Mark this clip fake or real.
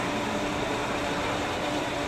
fake